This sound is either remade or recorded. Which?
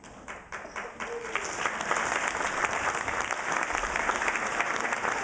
recorded